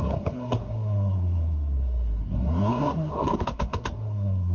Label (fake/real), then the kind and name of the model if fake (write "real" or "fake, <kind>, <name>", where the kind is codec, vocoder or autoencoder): fake, codec, SNAC